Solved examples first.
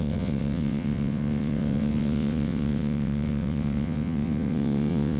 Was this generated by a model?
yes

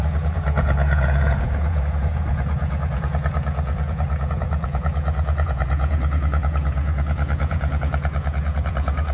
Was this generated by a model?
yes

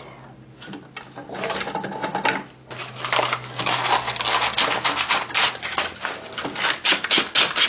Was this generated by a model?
no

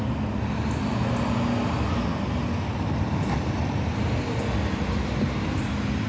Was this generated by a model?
no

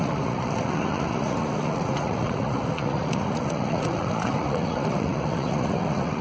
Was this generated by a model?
yes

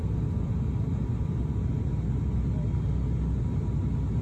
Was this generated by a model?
no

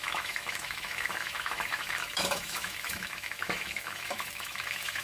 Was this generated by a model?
yes